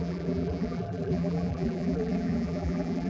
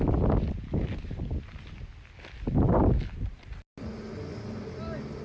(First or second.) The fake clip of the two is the first